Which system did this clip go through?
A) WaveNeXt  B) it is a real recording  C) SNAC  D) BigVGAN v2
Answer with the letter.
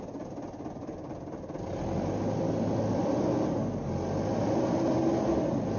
B